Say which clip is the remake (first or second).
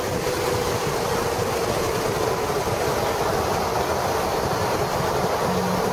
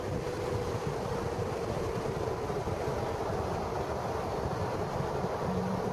second